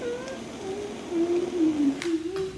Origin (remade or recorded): recorded